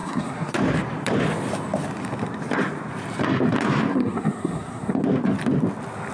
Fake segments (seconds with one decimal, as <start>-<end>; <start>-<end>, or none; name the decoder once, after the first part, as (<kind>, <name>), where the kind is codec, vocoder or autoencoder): 0.0-0.5 (codec, SNAC); 3.9-4.9